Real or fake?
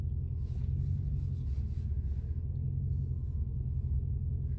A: real